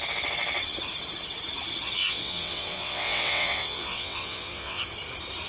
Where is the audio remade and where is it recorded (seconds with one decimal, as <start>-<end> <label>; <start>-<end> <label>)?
0.0-2.0 recorded; 2.0-4.8 remade; 4.8-5.5 recorded